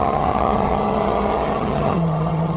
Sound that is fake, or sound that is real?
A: fake